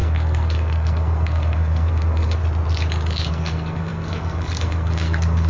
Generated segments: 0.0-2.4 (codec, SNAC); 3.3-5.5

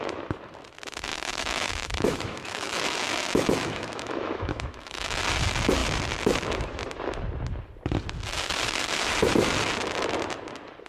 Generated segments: 1.1-5.2 (autoencoder, DAC-VAE)

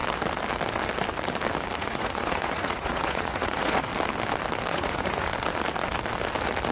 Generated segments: 1.8-3.9 (vocoder, Vocos); 4.7-5.3